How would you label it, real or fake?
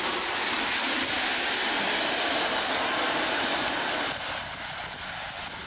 real